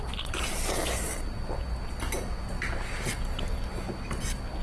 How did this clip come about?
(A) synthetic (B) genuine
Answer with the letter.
B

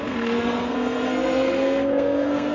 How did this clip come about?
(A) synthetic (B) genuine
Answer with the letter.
A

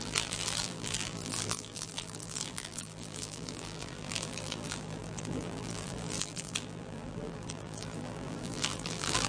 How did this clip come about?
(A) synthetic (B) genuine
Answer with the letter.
A